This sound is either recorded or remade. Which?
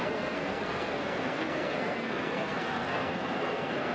remade